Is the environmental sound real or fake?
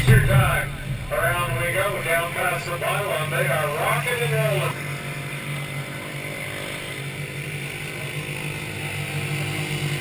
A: real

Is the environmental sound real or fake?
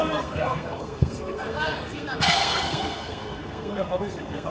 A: fake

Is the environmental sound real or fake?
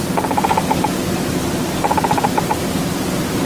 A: fake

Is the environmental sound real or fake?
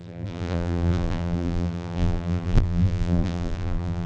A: fake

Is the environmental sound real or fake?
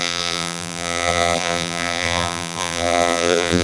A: fake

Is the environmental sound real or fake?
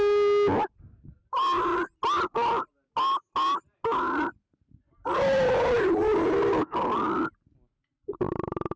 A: real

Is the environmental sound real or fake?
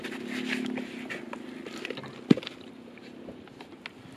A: real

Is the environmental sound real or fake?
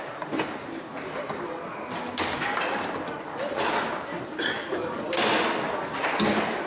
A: real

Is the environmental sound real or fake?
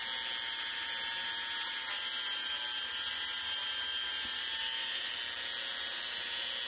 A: real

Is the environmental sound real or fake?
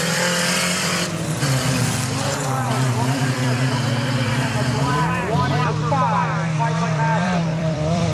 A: fake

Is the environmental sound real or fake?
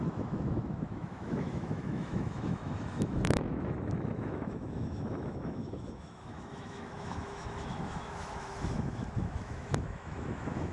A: fake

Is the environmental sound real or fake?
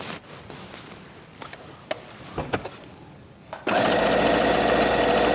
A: real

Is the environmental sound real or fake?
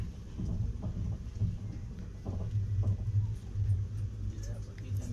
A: real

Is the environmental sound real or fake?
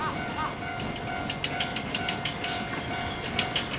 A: real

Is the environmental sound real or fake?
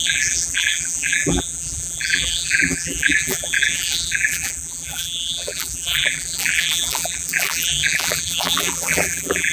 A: fake